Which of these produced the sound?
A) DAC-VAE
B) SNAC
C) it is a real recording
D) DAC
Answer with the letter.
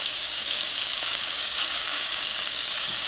D